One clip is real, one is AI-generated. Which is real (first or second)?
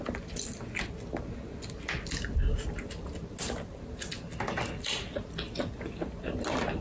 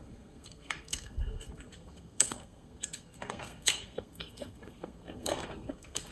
first